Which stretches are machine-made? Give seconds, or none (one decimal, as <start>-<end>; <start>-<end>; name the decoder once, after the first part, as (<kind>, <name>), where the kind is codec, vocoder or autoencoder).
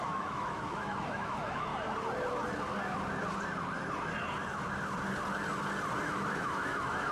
0.0-1.7 (autoencoder, DAC-VAE); 6.0-7.1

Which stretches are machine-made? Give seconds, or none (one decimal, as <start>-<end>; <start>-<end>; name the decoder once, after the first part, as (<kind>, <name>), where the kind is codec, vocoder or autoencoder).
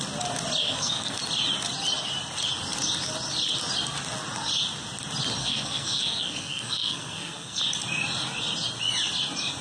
0.6-1.2 (codec, SNAC); 5.4-7.6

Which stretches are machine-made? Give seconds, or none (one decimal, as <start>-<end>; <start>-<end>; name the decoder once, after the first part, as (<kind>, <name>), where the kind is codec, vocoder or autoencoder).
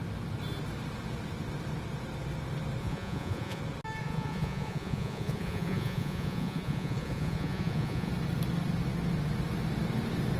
2.8-3.6 (vocoder, Vocos); 4.0-8.1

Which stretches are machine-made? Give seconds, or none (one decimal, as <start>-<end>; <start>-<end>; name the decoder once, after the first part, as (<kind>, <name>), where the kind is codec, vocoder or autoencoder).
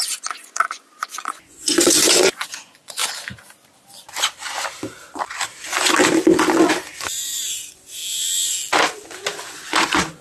0.0-3.0 (vocoder, Vocos); 7.2-8.0; 9.5-10.2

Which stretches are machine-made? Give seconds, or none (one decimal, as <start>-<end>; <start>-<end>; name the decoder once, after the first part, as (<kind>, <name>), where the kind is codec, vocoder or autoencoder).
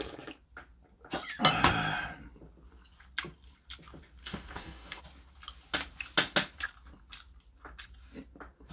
4.2-5.0 (codec, DAC)